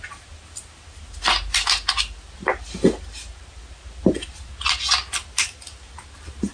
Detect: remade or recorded recorded